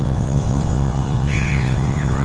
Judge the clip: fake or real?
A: fake